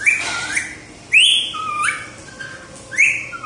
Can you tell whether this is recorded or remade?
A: recorded